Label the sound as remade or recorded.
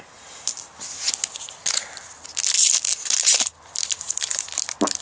recorded